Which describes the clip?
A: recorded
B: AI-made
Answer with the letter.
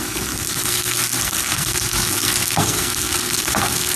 B